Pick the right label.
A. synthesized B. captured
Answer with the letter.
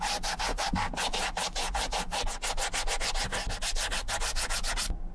B